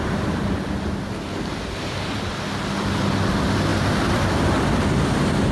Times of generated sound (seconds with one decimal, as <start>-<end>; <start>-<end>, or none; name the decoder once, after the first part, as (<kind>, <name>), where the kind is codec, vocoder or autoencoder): none